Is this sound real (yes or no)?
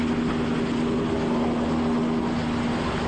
yes